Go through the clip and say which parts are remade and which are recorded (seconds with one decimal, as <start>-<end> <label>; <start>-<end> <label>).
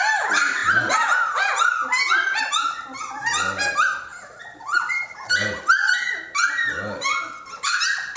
0.0-8.2 recorded